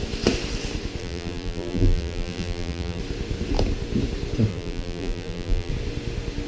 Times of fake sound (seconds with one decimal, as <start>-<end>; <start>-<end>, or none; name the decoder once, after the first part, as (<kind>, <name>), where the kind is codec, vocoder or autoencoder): 1.0-3.0 (vocoder, BigVGAN v2); 4.5-5.7